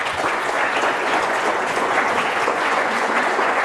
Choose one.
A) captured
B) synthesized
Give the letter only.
B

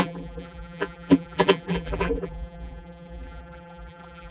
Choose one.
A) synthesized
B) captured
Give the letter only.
A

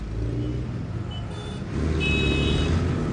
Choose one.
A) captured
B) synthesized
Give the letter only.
A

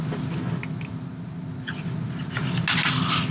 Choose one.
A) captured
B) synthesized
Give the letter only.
A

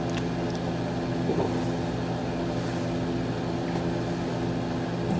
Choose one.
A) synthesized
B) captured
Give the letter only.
B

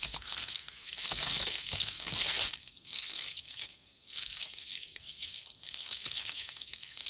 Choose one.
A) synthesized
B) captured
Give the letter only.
A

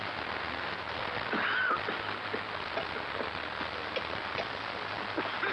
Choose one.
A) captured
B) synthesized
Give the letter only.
A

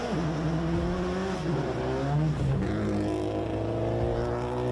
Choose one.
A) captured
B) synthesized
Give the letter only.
A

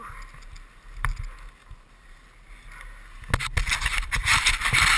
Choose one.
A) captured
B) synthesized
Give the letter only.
A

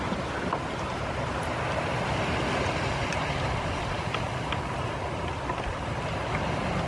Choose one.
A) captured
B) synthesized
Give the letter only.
A